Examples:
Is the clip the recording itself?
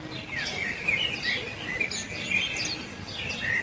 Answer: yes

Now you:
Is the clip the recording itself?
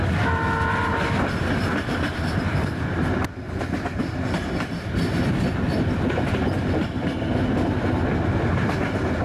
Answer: yes